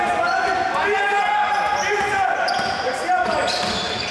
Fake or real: real